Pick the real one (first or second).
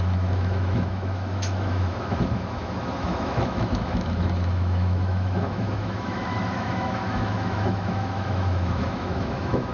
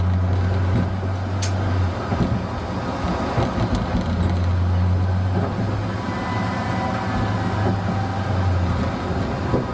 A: second